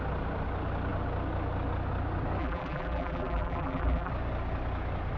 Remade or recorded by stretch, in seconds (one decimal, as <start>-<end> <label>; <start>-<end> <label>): 0.0-2.4 recorded; 2.4-4.1 remade; 4.1-5.2 recorded